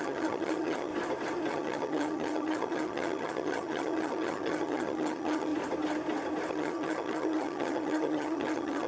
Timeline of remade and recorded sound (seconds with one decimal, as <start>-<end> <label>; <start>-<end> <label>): 0.0-0.9 remade; 0.9-1.5 recorded; 1.5-5.5 remade; 5.5-6.5 recorded; 6.5-8.9 remade